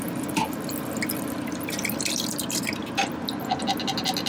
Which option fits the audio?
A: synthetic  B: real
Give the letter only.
B